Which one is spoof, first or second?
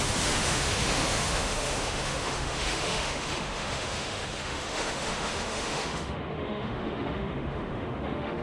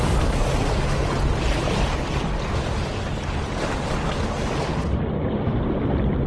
first